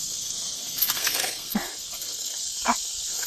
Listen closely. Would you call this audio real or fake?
fake